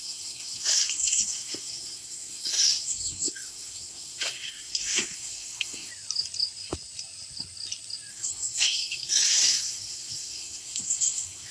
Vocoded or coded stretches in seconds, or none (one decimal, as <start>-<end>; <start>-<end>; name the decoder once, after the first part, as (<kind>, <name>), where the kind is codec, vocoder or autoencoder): 0.0-5.9 (codec, SNAC); 8.1-11.5